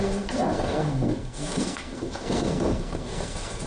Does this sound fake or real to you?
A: fake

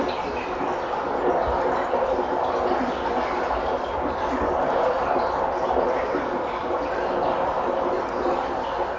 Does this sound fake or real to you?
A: real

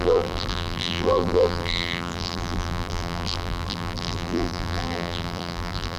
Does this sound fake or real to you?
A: fake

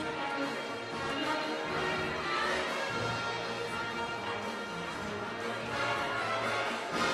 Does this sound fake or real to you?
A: real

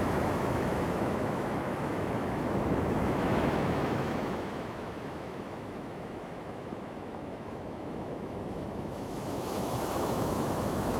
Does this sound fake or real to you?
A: fake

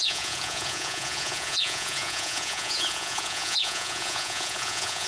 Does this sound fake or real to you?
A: fake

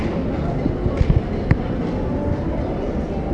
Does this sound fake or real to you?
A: real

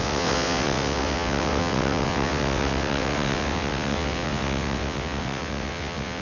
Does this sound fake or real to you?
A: fake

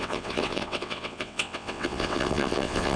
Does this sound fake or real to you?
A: fake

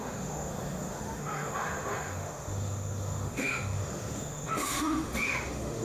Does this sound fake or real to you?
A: fake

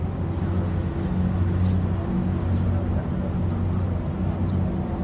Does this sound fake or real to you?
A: real